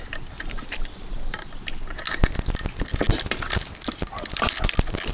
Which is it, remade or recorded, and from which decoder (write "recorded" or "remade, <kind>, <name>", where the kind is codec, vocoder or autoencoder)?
recorded